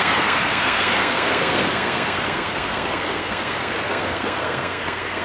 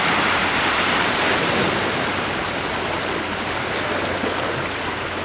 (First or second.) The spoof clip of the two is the first